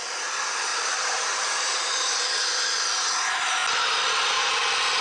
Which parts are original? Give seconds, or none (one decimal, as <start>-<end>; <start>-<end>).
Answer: 0.0-0.7; 1.9-5.0